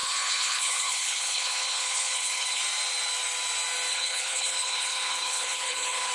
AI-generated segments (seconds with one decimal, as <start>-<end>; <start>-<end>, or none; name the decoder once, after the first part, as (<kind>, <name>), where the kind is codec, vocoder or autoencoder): 0.0-2.6 (codec, HILCodec); 3.9-6.1